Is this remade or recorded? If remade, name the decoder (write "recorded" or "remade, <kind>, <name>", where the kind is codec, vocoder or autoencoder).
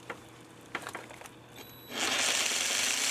recorded